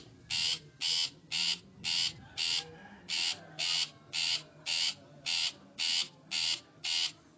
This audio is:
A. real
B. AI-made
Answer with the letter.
A